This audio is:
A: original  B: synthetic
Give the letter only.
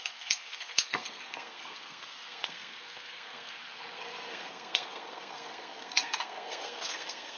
B